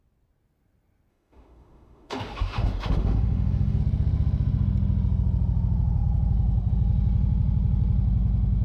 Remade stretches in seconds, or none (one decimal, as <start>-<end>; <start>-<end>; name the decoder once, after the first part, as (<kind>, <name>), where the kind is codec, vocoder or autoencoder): 1.1-3.8 (autoencoder, DAC-VAE)